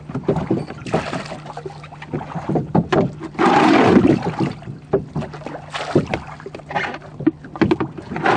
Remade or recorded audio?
recorded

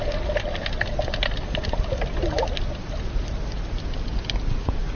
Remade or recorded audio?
recorded